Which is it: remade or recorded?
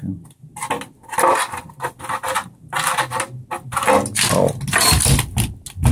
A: recorded